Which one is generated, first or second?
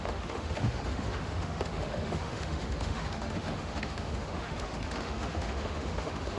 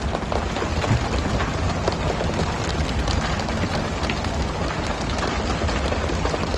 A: first